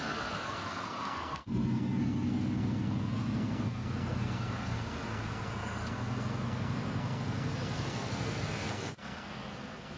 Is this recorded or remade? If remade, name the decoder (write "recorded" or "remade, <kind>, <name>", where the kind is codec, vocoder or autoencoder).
remade, codec, SNAC